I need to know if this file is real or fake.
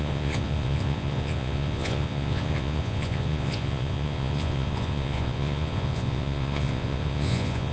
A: fake